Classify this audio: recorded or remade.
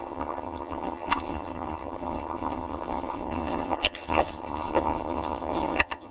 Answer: remade